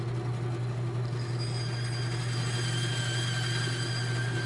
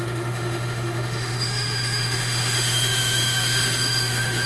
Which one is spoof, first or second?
second